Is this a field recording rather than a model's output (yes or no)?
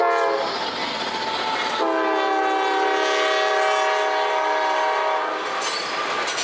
yes